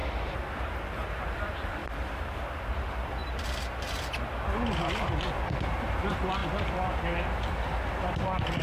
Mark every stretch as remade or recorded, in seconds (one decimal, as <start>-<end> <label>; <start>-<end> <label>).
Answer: 0.0-0.5 remade; 0.5-1.8 recorded; 1.8-2.6 remade; 2.6-3.2 recorded; 3.2-3.9 remade; 3.9-8.6 recorded